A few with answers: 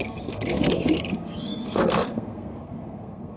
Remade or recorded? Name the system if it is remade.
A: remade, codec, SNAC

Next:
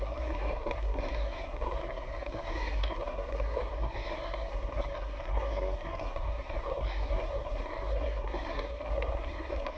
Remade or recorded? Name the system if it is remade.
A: remade, codec, SNAC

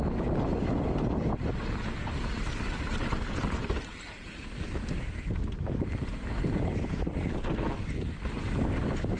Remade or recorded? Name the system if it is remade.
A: recorded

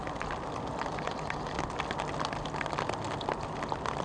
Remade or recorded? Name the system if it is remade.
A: recorded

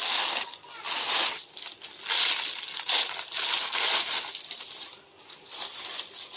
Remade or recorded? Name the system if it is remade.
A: recorded